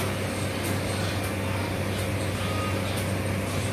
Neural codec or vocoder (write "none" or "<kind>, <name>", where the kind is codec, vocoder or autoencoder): none